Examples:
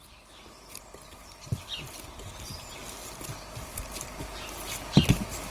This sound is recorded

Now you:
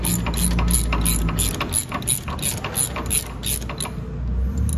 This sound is recorded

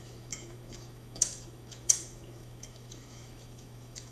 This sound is remade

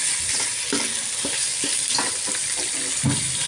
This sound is recorded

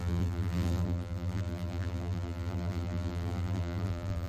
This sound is remade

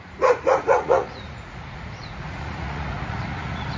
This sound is remade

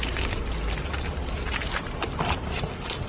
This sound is recorded